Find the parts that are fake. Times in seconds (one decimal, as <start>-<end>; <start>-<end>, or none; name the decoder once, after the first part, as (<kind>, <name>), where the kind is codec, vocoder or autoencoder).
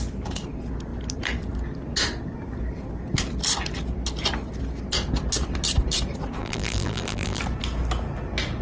6.4-7.4 (vocoder, BigVGAN v2)